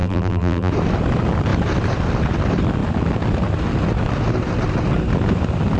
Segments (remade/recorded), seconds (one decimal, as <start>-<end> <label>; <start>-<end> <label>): 0.0-0.7 remade; 0.7-5.8 recorded